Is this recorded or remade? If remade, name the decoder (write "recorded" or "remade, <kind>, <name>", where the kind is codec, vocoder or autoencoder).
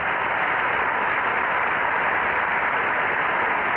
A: recorded